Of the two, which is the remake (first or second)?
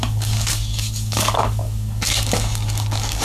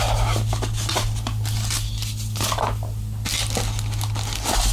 first